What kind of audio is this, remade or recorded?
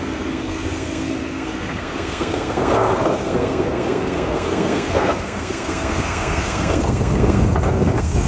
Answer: remade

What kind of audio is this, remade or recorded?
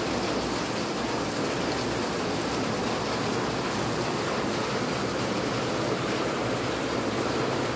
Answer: recorded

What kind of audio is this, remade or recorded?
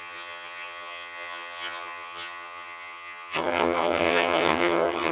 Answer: remade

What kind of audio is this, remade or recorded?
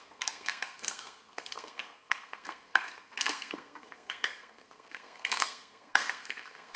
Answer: remade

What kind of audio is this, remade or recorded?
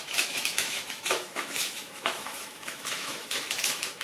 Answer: remade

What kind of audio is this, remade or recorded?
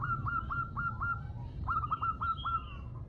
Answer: remade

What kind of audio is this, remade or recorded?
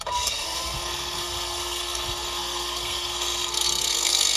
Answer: remade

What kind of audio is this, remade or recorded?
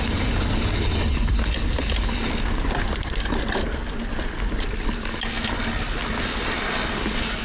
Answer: recorded